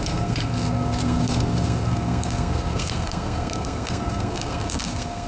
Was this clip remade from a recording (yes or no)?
yes